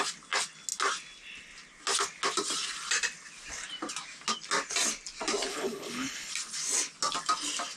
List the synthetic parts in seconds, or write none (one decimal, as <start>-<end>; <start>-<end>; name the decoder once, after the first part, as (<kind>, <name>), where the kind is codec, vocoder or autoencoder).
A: 5.5-6.3 (codec, HILCodec)

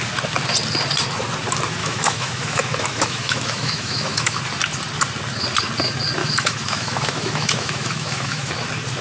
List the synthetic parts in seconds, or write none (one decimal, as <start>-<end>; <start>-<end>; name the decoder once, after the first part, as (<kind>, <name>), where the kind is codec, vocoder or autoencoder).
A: 1.8-4.4 (autoencoder, DAC-VAE); 6.2-8.5